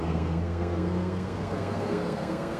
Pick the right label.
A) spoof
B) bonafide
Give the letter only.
A